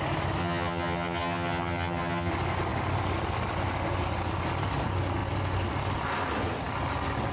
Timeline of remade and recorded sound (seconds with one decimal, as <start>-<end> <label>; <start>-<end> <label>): 0.0-0.4 recorded; 0.4-2.3 remade; 2.3-7.3 recorded